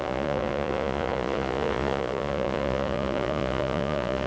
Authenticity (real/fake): fake